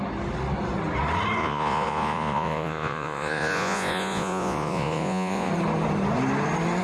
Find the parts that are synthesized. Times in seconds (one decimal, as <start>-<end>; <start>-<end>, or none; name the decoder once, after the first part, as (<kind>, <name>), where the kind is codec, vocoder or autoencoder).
1.4-5.5 (vocoder, Vocos)